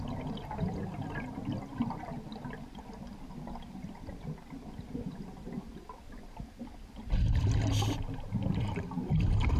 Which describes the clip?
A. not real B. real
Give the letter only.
B